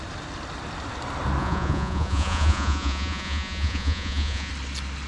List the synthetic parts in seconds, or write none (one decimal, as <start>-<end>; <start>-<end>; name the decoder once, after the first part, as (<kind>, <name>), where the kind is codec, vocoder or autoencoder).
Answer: 1.4-4.5 (vocoder, Vocos)